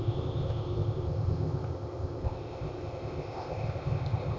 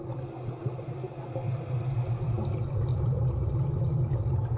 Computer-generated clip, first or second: first